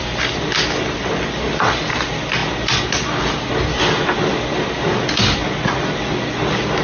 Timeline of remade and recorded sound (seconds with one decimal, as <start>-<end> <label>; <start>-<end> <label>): 0.0-6.8 recorded